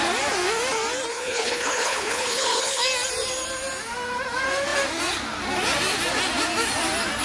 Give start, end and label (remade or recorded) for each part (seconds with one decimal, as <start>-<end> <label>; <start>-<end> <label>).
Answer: 0.0-1.1 recorded; 1.1-2.8 remade; 2.8-7.2 recorded